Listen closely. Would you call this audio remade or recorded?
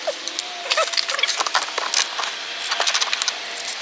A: recorded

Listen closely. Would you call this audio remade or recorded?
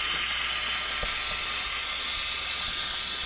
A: recorded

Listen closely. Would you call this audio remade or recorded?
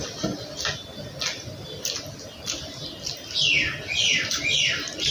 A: recorded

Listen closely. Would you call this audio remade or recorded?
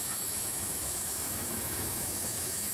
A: remade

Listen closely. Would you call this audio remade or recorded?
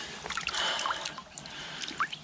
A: recorded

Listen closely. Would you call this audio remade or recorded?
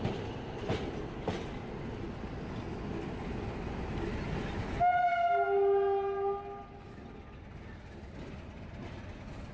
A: recorded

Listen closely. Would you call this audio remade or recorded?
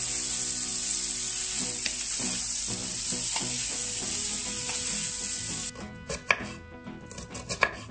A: recorded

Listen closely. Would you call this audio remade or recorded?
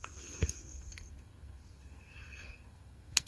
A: remade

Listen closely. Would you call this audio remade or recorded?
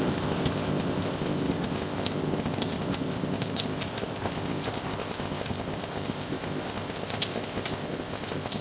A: remade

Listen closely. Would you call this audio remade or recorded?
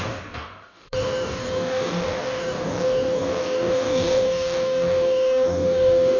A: remade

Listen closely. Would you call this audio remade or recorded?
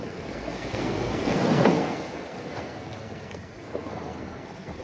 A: remade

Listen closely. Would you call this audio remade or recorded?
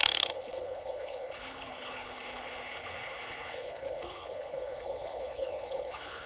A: remade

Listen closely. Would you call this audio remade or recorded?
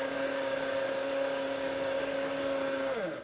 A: remade